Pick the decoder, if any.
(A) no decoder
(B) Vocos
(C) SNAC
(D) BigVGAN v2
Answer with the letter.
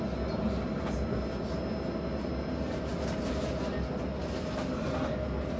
A